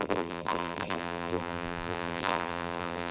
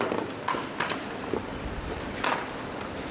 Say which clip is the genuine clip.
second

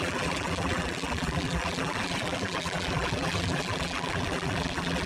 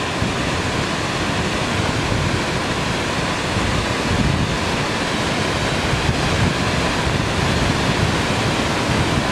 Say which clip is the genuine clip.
second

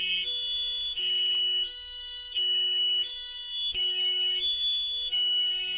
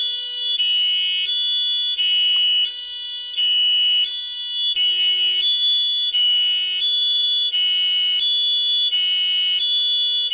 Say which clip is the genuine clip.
second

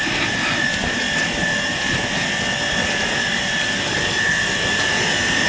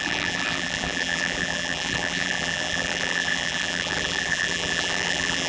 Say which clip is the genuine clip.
first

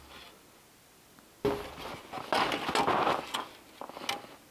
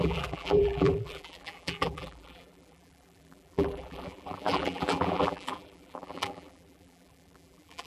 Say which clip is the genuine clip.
first